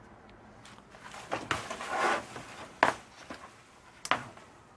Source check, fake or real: real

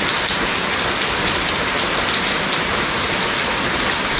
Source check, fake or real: real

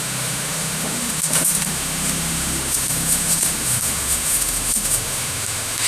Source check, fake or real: fake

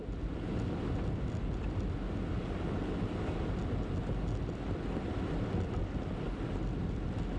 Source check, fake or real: real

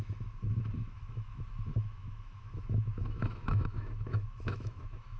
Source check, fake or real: fake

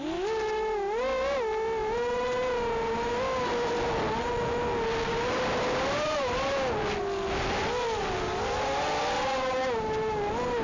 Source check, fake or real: real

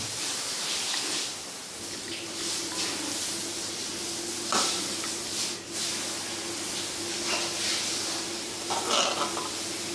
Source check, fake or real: real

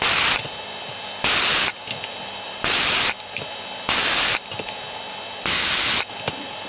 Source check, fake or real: real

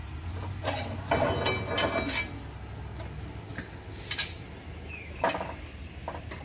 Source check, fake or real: real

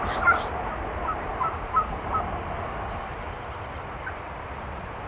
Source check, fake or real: real